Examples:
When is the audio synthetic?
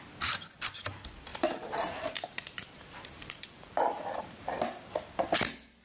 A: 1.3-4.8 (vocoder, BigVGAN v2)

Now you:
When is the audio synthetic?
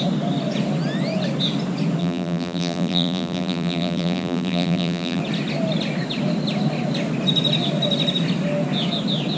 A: 2.0-5.2 (vocoder, BigVGAN v2)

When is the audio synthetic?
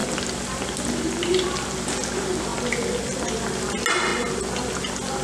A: none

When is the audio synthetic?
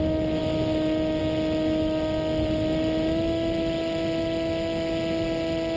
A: none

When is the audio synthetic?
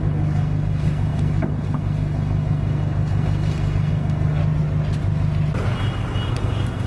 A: 0.0-4.4 (codec, SNAC); 6.3-6.9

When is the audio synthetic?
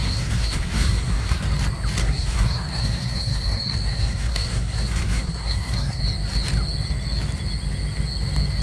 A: 0.0-1.4 (codec, SNAC); 2.0-6.0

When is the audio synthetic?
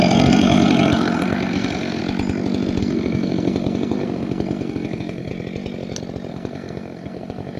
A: 0.0-2.0 (codec, SNAC); 2.8-5.3; 6.3-7.6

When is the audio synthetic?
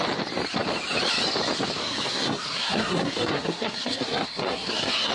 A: 1.8-5.1 (codec, SNAC)